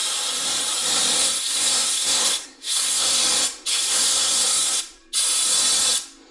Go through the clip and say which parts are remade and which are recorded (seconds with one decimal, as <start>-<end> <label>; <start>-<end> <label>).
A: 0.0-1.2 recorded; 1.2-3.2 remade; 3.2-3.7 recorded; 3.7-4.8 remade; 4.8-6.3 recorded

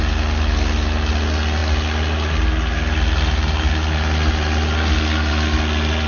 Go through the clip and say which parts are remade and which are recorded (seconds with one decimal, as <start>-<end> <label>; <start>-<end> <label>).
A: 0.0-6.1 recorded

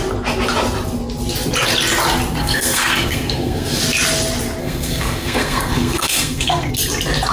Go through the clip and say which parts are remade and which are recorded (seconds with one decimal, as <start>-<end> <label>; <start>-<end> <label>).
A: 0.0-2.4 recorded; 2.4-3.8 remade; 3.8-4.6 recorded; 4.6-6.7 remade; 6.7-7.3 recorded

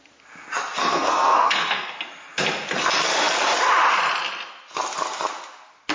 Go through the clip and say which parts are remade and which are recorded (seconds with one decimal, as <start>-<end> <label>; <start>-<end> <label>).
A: 0.0-0.8 recorded; 0.8-1.9 remade; 1.9-5.9 recorded

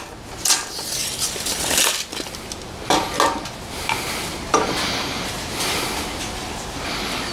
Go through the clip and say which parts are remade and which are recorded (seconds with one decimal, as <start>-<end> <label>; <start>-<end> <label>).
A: 0.0-7.3 recorded